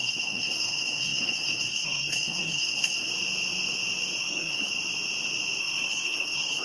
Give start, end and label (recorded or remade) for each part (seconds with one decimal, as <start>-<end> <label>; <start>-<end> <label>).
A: 0.0-3.1 remade; 3.1-4.2 recorded; 4.2-4.7 remade; 4.7-5.6 recorded; 5.6-6.6 remade